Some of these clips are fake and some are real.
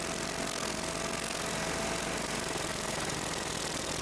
real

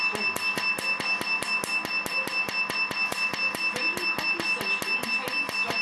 real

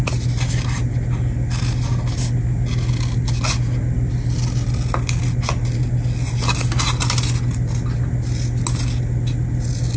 real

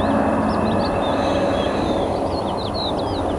real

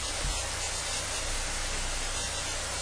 real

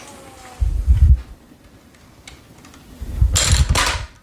real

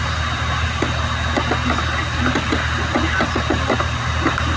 real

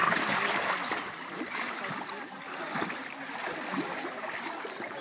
real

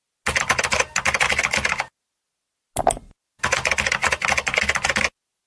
real